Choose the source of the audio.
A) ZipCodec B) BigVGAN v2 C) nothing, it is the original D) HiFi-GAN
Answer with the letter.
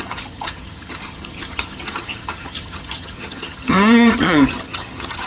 D